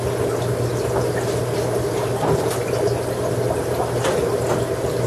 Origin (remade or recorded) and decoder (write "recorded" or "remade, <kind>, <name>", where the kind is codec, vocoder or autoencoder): recorded